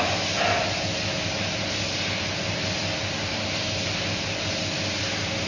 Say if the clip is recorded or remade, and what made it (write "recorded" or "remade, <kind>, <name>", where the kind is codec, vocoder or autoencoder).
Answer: recorded